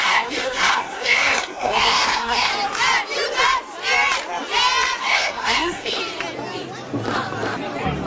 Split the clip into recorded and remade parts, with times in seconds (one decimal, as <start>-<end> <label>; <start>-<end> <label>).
0.0-2.5 remade; 2.5-5.0 recorded; 5.0-6.0 remade; 6.0-8.1 recorded